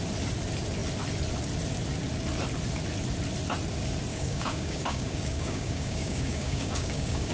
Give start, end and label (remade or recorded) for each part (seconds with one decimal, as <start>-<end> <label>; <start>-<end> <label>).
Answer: 0.0-4.1 recorded; 4.1-7.3 remade